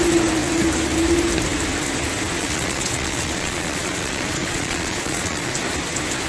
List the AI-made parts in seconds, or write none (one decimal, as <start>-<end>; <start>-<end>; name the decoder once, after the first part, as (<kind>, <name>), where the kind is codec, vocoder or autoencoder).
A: 2.4-5.5 (vocoder, Vocos)